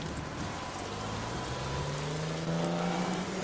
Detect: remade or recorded recorded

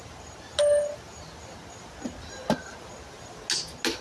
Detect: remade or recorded recorded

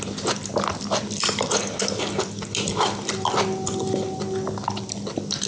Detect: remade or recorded recorded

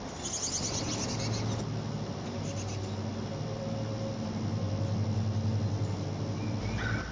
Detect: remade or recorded recorded